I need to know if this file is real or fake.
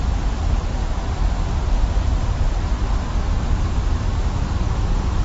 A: real